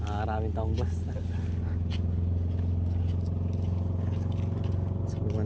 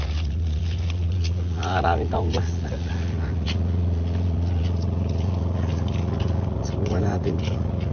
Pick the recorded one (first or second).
first